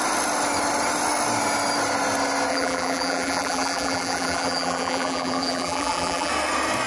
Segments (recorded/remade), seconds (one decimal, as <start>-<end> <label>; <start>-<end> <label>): 0.0-2.5 recorded; 2.5-6.3 remade; 6.3-6.9 recorded

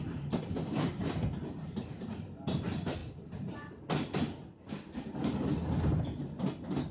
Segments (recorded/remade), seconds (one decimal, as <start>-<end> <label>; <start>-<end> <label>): 0.0-6.9 recorded

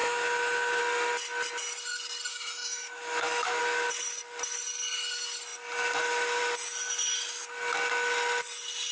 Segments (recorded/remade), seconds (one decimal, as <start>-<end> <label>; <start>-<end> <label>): 0.0-0.8 remade; 0.8-2.3 recorded; 2.3-3.6 remade; 3.6-8.9 recorded